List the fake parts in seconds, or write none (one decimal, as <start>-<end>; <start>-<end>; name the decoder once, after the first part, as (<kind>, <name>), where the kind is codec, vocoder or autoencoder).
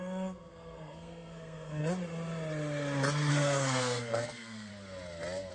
0.0-1.8 (codec, SNAC); 3.3-4.7